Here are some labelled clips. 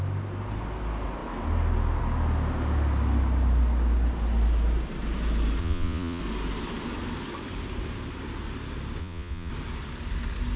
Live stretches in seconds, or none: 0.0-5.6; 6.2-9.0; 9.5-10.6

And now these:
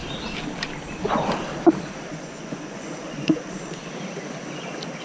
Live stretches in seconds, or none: 0.0-2.1; 3.5-5.0

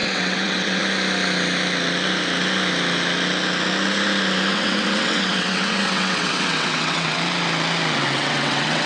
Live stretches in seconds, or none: 0.8-4.5; 7.2-8.0

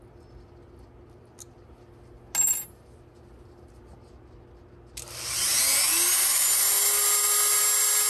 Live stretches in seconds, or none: 0.0-8.1

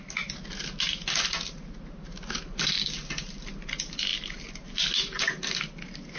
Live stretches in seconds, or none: 0.0-6.2

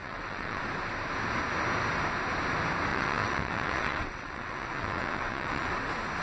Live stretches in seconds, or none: 0.6-2.9; 5.7-6.2

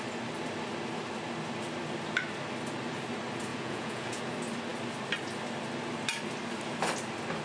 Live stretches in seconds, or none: 0.0-3.5; 4.2-7.4